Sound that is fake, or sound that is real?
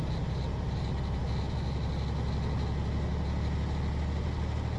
real